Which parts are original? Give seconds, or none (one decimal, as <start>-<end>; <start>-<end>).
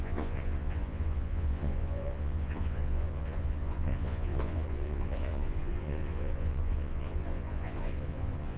none